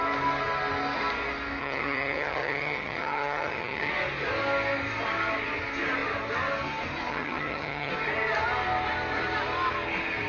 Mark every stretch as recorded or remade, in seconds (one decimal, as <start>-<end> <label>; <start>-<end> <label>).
0.0-1.6 recorded; 1.6-3.9 remade; 3.9-7.1 recorded; 7.1-7.9 remade; 7.9-10.3 recorded